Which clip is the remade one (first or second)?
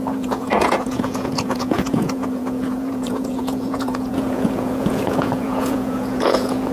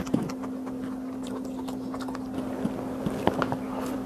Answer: first